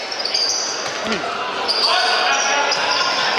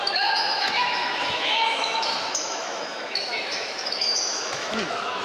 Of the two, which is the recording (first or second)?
first